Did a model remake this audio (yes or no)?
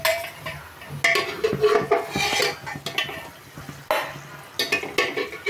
no